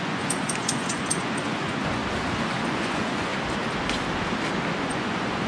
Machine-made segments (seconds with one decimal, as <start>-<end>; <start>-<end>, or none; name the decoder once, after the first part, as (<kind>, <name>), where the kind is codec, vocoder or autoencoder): 0.0-2.0 (vocoder, Vocos); 2.5-3.3; 4.8-5.5